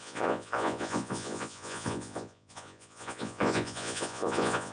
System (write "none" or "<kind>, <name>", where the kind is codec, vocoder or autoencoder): vocoder, Vocos